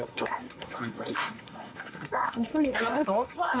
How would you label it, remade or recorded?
remade